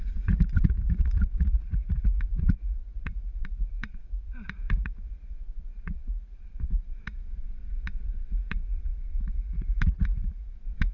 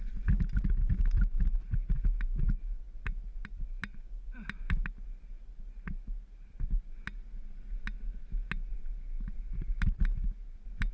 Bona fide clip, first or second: second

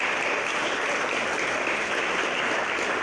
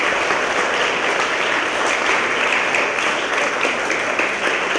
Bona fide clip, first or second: second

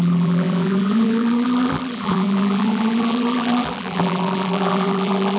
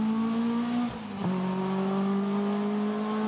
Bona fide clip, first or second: second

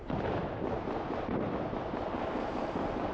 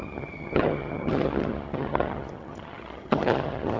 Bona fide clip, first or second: first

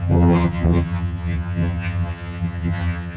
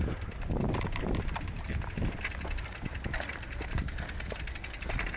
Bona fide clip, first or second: second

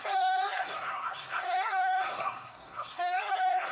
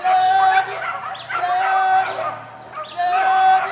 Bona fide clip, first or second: second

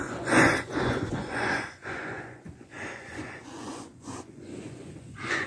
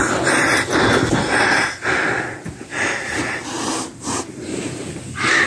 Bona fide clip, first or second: second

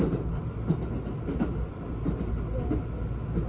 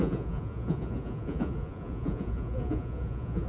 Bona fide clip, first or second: first